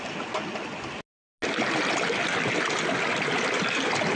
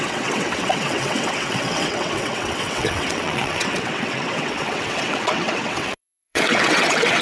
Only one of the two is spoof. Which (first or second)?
second